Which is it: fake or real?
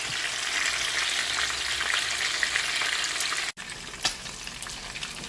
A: real